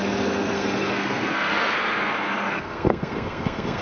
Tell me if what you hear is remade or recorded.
remade